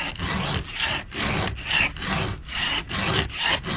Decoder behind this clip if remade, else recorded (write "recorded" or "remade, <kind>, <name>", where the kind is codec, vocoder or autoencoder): recorded